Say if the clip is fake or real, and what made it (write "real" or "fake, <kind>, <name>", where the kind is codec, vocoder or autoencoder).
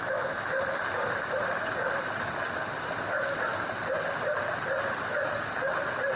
real